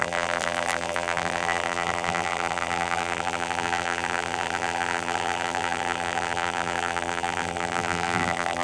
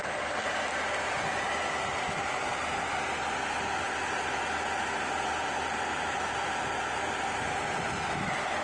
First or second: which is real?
second